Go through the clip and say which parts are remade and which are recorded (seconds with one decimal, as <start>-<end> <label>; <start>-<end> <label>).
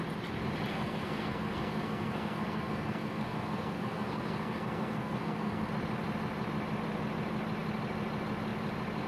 0.0-0.7 recorded; 0.7-5.7 remade; 5.7-9.1 recorded